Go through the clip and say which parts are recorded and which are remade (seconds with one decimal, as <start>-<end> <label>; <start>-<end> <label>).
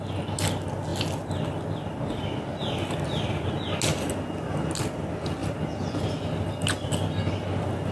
0.0-7.9 recorded